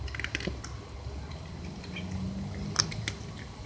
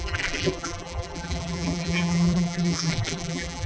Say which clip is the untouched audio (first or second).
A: first